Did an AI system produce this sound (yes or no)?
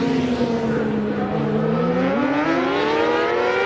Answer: no